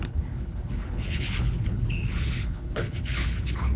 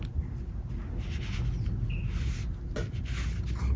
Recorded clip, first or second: second